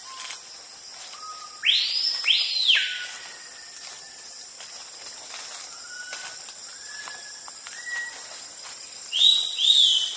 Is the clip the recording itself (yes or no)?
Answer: yes